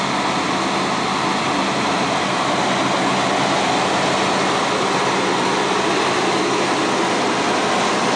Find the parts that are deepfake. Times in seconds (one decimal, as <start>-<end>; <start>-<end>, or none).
none